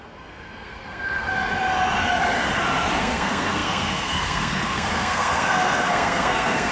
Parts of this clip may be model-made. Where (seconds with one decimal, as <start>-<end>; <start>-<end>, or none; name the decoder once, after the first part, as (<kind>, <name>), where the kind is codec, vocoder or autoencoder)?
0.0-1.3 (codec, SNAC); 3.0-6.7